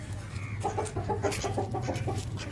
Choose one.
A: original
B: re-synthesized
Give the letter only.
A